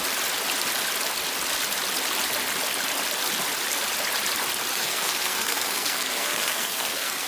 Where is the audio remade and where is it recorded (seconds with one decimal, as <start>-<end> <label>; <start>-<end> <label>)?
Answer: 0.0-4.7 recorded; 4.7-7.3 remade